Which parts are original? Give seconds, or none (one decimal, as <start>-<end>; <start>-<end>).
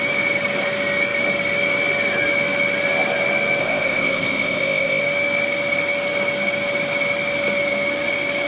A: 0.0-3.6; 5.0-8.5